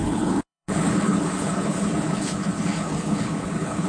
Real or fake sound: fake